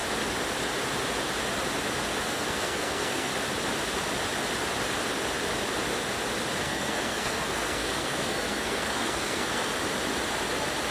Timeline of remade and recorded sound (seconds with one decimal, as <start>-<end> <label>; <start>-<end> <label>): 0.0-2.2 recorded; 2.2-3.3 remade; 3.3-6.6 recorded; 6.6-9.7 remade; 9.7-10.9 recorded